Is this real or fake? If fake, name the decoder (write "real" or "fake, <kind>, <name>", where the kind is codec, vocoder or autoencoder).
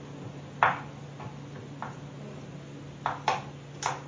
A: real